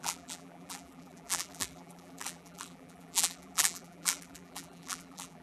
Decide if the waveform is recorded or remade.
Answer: remade